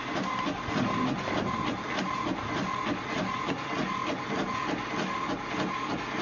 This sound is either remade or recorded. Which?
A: recorded